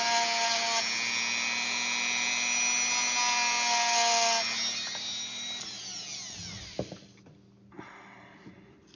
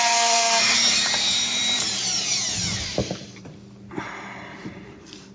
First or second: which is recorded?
first